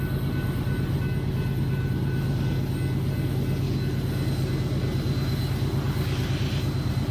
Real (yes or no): yes